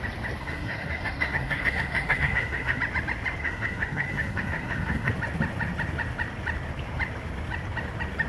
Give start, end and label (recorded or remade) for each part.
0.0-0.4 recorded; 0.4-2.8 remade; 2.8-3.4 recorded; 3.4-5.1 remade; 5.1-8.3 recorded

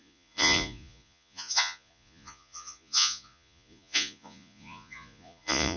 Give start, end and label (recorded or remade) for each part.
0.0-5.8 remade

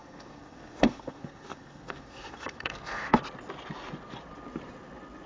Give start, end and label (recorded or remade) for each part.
0.0-3.2 remade; 3.2-5.3 recorded

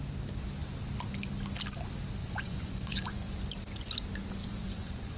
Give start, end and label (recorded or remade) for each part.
0.0-2.2 recorded; 2.2-3.4 remade; 3.4-4.4 recorded; 4.4-5.2 remade

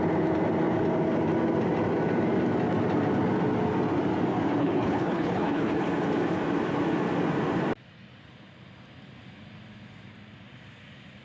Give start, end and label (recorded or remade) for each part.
0.0-4.6 recorded; 4.6-5.9 remade; 5.9-11.2 recorded

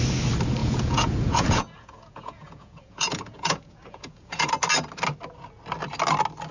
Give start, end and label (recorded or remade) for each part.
0.0-0.6 recorded; 0.6-4.5 remade; 4.5-6.5 recorded

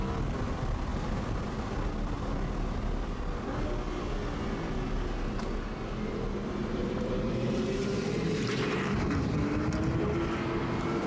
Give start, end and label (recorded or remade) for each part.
0.0-0.9 recorded; 0.9-1.5 remade; 1.5-6.6 recorded; 6.6-8.8 remade; 8.8-11.1 recorded